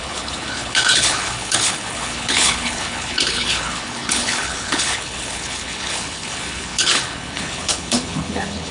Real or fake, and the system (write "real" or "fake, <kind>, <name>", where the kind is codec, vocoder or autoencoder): fake, codec, HILCodec